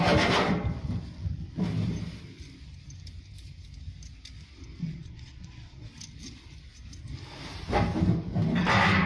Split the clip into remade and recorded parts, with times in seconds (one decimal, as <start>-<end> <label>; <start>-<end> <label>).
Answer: 0.0-4.8 recorded; 4.8-5.9 remade; 5.9-9.1 recorded